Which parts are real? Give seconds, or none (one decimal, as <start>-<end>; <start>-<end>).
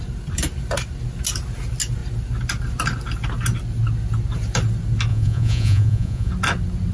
0.0-5.1; 6.3-6.9